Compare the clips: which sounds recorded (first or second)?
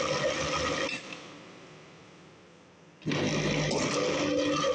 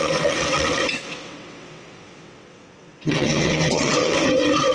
first